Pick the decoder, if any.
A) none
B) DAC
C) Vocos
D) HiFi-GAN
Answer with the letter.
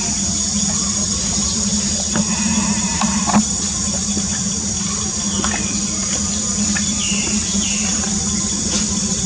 A